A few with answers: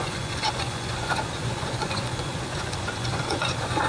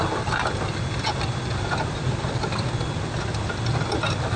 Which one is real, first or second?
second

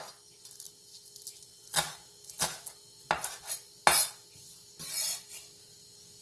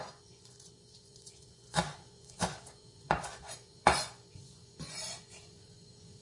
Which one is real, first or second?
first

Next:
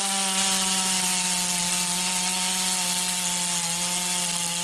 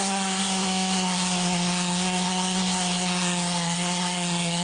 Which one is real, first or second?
first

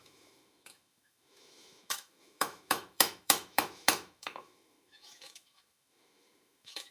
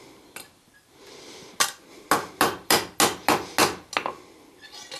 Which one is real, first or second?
second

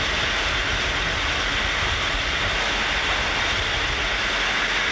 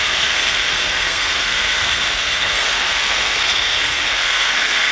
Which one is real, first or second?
first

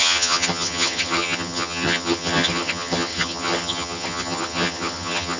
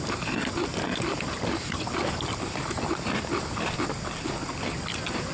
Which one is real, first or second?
second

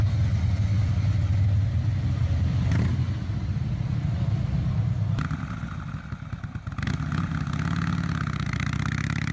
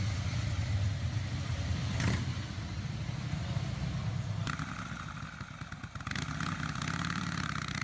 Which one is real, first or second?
first